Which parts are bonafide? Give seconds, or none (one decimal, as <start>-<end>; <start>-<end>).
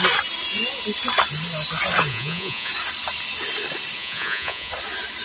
0.0-2.1; 2.7-4.0; 4.7-5.2